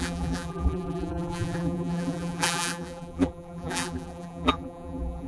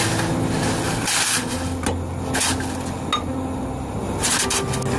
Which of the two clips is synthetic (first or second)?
first